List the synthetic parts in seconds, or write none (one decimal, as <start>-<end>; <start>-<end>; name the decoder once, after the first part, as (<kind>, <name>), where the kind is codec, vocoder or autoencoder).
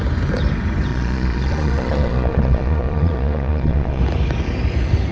0.9-4.0 (vocoder, Vocos)